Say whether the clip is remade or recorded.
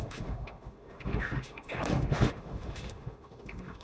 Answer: remade